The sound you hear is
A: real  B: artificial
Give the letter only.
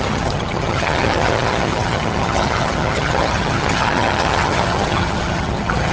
B